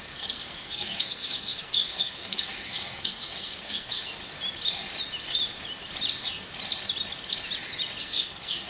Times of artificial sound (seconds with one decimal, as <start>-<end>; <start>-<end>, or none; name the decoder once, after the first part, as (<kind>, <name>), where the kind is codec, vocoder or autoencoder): 0.0-4.2 (codec, SNAC); 8.0-8.7